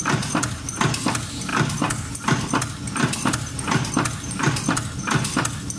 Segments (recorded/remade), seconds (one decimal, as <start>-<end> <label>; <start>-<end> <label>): 0.0-5.8 recorded